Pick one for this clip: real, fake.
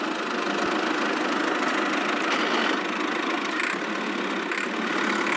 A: real